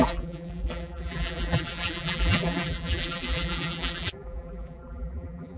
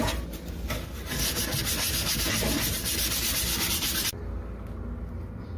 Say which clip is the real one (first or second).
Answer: second